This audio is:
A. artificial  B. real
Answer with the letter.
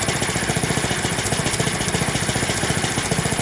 B